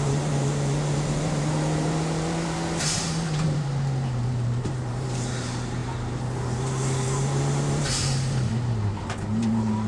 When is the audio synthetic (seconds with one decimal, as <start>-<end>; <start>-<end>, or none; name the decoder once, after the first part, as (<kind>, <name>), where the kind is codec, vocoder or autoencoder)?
0.0-9.9 (vocoder, BigVGAN v2)